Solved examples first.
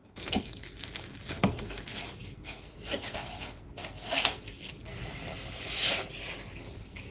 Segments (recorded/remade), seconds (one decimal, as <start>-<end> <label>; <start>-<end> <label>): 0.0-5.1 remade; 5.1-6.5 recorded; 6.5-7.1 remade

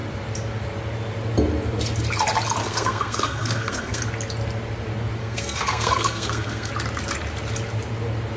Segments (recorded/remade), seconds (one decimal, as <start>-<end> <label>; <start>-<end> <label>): 0.0-2.6 recorded; 2.6-4.0 remade; 4.0-5.2 recorded; 5.2-6.7 remade; 6.7-8.4 recorded

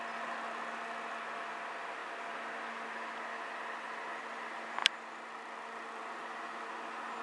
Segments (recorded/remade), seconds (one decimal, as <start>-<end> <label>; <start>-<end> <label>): 0.0-7.2 recorded